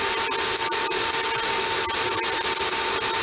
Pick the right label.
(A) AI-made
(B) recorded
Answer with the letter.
B